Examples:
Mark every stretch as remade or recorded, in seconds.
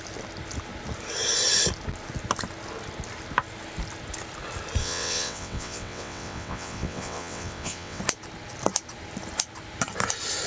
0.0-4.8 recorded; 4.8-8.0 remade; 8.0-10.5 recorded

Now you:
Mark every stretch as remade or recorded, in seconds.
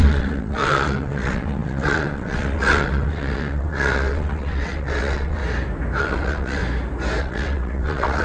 0.0-5.4 remade; 5.4-6.0 recorded; 6.0-6.6 remade; 6.6-7.2 recorded; 7.2-8.2 remade